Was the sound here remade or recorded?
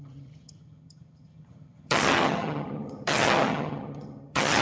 remade